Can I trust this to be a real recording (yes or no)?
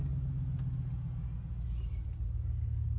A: yes